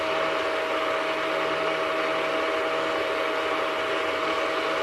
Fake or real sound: real